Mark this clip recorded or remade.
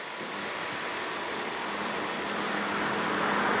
recorded